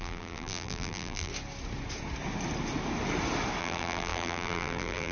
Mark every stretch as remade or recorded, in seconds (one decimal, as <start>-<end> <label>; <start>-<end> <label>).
0.0-1.3 remade; 1.3-3.6 recorded; 3.6-5.1 remade